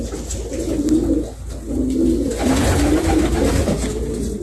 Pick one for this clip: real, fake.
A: real